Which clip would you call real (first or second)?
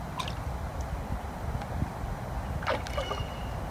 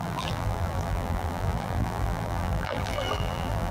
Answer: first